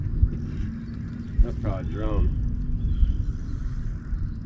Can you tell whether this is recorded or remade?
remade